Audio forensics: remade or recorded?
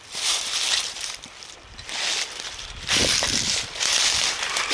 recorded